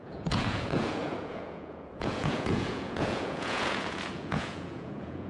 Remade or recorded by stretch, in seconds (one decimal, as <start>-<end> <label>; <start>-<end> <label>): 0.0-5.3 remade